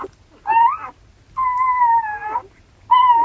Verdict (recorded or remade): recorded